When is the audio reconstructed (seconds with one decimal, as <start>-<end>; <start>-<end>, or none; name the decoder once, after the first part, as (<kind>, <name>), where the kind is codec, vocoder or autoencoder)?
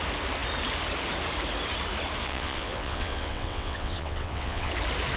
2.2-4.7 (vocoder, WaveNeXt)